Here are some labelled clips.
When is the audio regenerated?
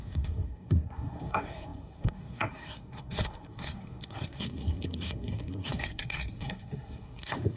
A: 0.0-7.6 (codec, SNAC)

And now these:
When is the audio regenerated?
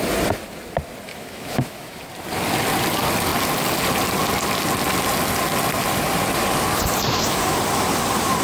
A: 1.1-2.0 (autoencoder, DAC-VAE)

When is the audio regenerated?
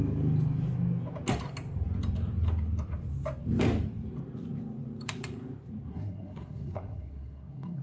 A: 5.9-7.8 (codec, SNAC)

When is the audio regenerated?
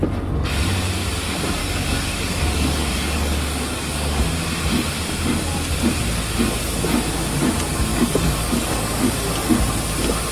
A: 1.6-4.2 (codec, DAC); 7.9-9.1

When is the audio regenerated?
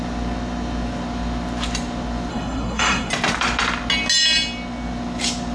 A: 2.3-3.1 (codec, SNAC)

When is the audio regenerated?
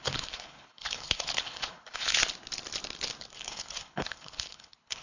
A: 0.0-2.2 (codec, HILCodec); 3.3-5.0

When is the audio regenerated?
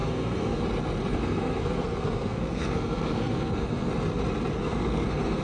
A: 0.0-0.6 (codec, SNAC); 1.1-3.9; 4.6-5.4